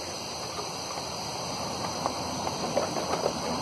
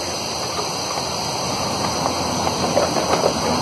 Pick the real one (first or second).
second